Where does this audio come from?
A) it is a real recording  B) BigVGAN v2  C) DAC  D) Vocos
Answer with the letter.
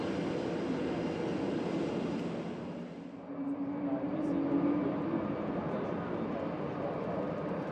A